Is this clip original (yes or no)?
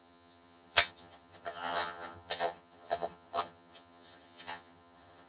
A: no